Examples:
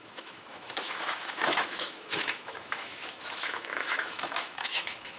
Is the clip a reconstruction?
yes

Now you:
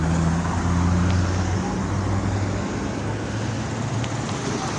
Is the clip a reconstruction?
no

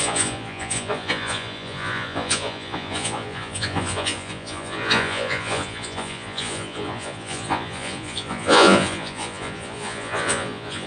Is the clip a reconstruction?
yes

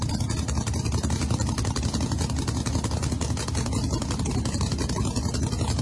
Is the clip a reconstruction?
no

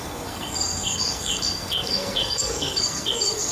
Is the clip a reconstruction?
yes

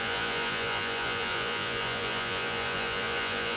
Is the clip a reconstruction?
yes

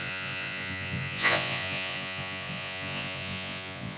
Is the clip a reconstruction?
yes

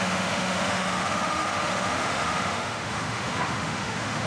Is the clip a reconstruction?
yes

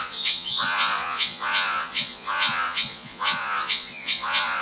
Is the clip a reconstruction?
yes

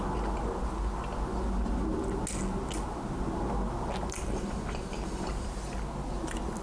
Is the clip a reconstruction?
no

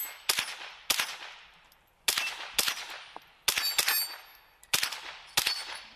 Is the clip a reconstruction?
no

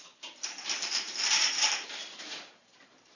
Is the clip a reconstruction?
yes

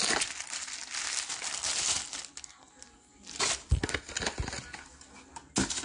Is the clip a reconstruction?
no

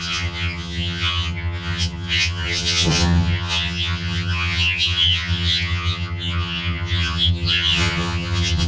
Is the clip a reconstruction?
yes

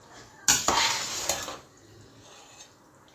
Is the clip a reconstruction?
no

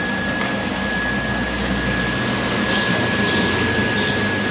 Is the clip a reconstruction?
no